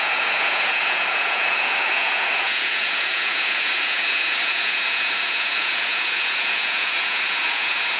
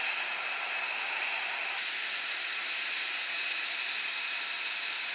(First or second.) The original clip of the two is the second